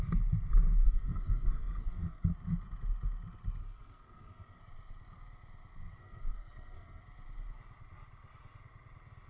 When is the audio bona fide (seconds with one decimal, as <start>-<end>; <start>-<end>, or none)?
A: 0.0-0.8; 2.3-3.6; 4.6-6.0; 7.0-9.3

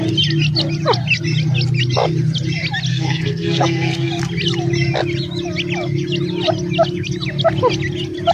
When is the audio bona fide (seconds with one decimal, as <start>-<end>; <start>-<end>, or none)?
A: 0.0-2.9; 4.1-8.3

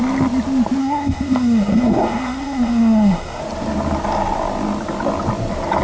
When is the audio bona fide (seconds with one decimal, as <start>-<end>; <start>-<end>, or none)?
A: 0.0-0.8; 3.4-5.8

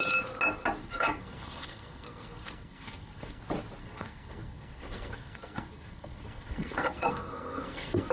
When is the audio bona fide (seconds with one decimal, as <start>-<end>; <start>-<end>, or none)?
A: 0.0-0.8; 3.4-3.8

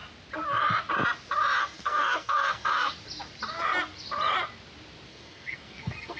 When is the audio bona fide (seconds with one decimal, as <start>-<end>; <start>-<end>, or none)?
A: 0.0-1.6; 2.9-5.1